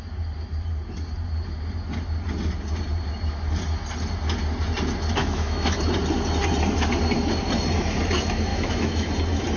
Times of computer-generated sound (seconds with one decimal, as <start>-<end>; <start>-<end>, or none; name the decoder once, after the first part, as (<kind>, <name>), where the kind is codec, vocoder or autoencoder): 5.2-5.8 (autoencoder, DAC-VAE); 8.5-9.1